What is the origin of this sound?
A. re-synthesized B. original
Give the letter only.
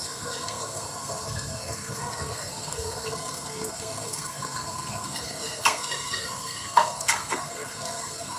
A